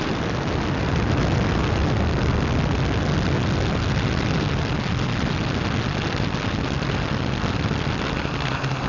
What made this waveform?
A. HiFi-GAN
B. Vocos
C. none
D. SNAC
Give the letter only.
C